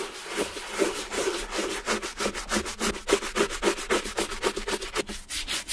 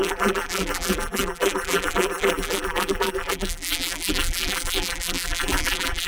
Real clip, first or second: first